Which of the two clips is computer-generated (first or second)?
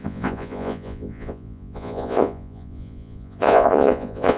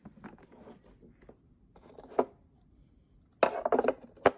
first